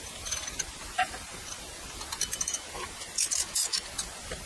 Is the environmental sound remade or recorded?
recorded